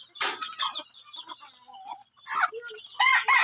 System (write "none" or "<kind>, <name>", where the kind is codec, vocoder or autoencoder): none